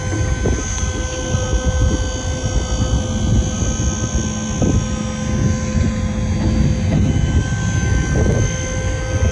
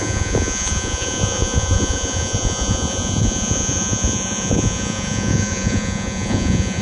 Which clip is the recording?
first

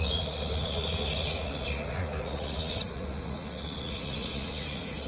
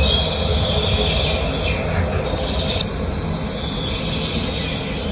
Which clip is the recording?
second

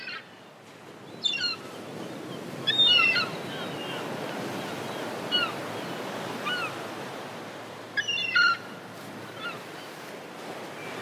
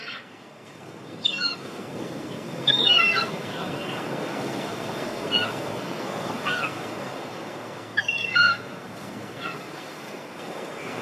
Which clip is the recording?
first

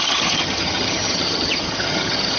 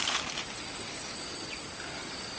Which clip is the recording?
second